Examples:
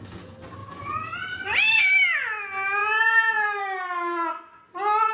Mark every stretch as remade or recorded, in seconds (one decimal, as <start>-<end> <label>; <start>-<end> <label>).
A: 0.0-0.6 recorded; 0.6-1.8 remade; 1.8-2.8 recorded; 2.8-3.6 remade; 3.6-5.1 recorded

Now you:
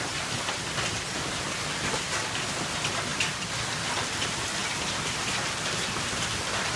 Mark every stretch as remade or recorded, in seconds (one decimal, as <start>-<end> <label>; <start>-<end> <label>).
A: 0.0-6.8 recorded

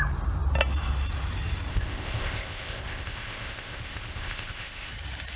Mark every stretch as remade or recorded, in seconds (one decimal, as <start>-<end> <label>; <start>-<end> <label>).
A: 0.0-1.7 recorded; 1.7-4.9 remade; 4.9-5.4 recorded

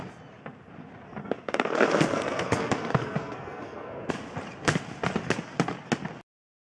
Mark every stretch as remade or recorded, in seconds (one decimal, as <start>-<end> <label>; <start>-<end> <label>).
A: 0.0-1.2 recorded; 1.2-4.1 remade; 4.1-6.7 recorded

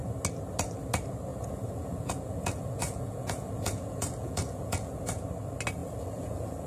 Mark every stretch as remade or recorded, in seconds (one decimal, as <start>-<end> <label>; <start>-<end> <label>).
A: 0.0-1.3 recorded; 1.3-5.1 remade; 5.1-5.8 recorded; 5.8-6.7 remade